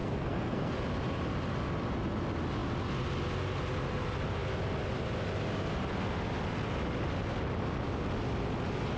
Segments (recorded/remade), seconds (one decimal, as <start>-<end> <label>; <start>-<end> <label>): 0.0-0.7 remade; 0.7-9.0 recorded